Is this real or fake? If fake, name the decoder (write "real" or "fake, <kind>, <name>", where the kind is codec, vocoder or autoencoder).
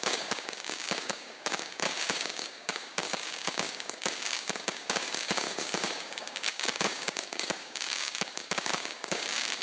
fake, codec, DAC